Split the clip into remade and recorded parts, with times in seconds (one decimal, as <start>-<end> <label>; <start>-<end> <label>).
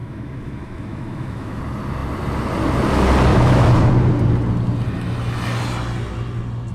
0.0-1.6 remade; 1.6-3.3 recorded; 3.3-3.9 remade; 3.9-6.7 recorded